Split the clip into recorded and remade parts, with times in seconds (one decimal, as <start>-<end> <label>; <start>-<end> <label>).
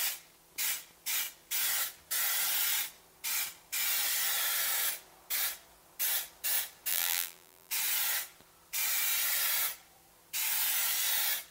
0.0-6.9 recorded; 6.9-7.7 remade; 7.7-11.5 recorded